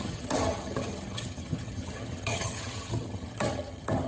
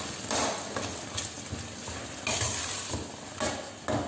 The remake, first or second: first